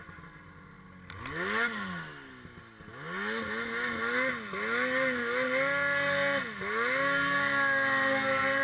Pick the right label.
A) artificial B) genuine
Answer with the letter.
B